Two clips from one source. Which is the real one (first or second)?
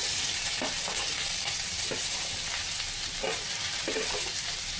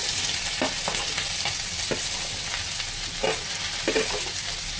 second